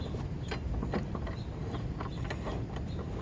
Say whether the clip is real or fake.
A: real